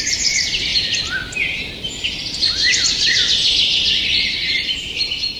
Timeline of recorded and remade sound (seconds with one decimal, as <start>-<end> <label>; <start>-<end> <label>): 0.0-0.7 remade; 0.7-3.0 recorded; 3.0-3.7 remade; 3.7-4.5 recorded; 4.5-5.4 remade